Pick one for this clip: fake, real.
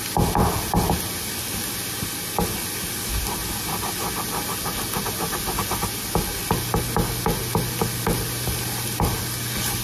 real